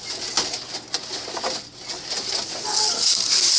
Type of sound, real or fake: real